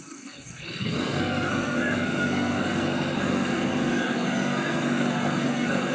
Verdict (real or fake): fake